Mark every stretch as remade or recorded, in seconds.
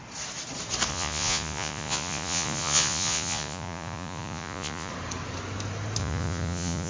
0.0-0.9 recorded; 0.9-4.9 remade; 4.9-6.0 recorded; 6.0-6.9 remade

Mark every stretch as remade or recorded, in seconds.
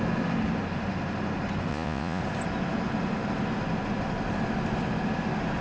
0.0-1.7 recorded; 1.7-2.2 remade; 2.2-5.6 recorded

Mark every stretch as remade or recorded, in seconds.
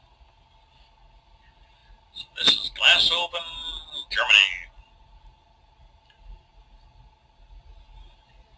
0.0-8.6 recorded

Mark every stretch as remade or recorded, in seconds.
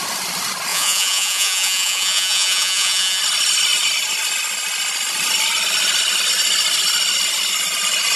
0.0-0.7 recorded; 0.7-3.2 remade; 3.2-8.2 recorded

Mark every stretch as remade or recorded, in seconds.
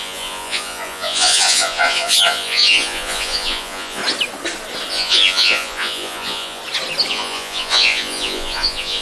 0.0-4.0 remade; 4.0-4.9 recorded; 4.9-6.6 remade; 6.6-7.1 recorded; 7.1-9.0 remade